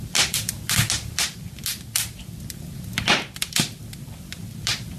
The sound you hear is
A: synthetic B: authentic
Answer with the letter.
B